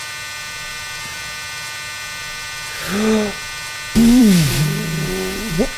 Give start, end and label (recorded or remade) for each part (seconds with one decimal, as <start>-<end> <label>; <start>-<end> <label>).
0.0-5.8 recorded